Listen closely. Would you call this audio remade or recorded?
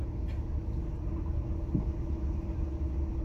recorded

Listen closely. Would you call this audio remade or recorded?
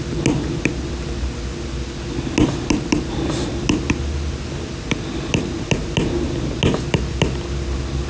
recorded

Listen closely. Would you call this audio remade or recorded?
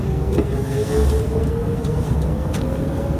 remade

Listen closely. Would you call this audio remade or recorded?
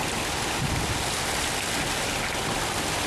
recorded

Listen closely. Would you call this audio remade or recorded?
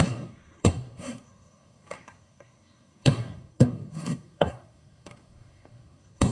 remade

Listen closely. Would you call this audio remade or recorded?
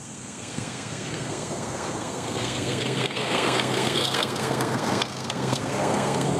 remade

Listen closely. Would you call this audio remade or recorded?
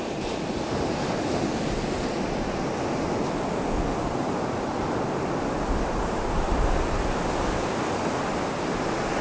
recorded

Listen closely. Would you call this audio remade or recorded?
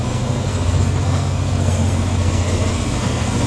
remade